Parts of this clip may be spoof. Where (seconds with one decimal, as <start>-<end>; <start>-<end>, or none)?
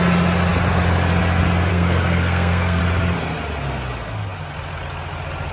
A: 1.7-2.8